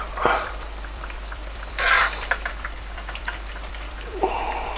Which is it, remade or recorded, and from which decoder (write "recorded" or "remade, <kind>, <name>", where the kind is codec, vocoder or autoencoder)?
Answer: remade, vocoder, BigVGAN v2